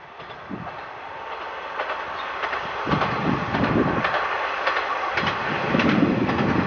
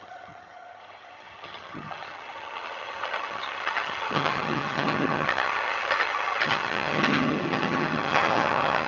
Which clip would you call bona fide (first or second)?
first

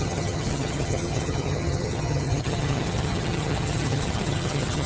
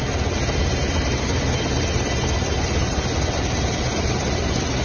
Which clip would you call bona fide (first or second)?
second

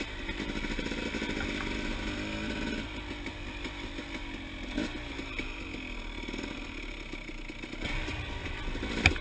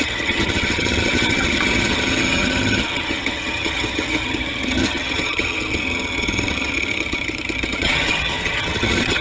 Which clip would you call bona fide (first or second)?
first